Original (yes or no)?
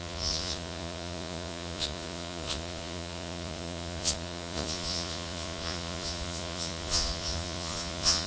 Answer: no